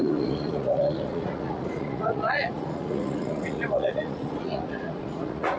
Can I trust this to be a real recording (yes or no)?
no